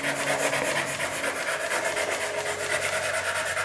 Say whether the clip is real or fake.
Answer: real